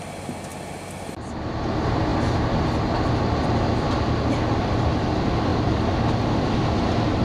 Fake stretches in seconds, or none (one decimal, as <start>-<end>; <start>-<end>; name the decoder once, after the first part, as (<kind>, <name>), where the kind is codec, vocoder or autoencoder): none